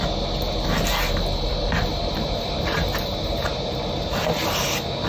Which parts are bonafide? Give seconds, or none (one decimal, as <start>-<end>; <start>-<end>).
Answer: 0.0-1.9; 4.1-5.1